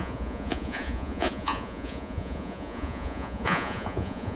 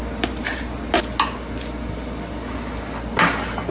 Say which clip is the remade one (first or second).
first